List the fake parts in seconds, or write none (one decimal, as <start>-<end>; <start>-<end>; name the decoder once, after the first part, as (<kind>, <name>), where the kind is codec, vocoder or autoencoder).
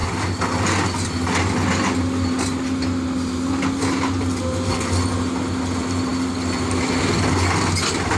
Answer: none